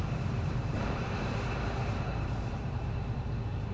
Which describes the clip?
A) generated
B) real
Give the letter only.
A